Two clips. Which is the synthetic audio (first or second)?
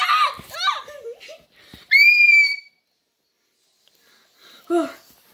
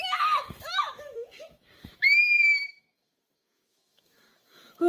second